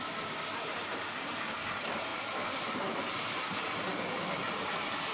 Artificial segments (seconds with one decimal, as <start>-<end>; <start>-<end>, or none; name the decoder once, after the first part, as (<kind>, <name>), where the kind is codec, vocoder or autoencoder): none